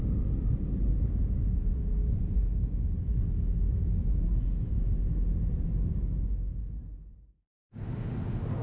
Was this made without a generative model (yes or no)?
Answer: yes